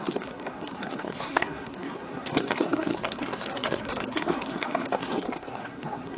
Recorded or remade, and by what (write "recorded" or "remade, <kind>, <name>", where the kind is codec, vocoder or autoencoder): remade, codec, SNAC